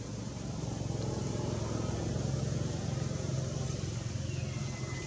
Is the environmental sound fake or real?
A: real